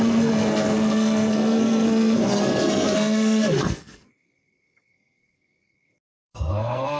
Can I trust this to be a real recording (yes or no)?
no